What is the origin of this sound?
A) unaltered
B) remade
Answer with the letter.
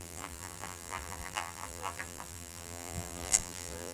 B